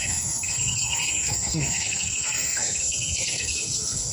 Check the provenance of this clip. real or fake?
fake